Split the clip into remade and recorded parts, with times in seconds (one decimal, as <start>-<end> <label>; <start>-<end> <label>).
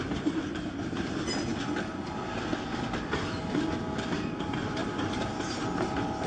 0.0-4.8 recorded; 4.8-6.3 remade